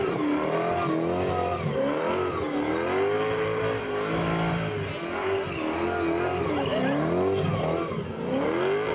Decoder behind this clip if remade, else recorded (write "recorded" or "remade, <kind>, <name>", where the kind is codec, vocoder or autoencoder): recorded